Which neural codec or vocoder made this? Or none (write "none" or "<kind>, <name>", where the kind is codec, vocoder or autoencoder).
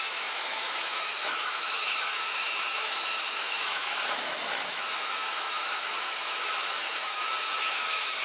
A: autoencoder, DAC-VAE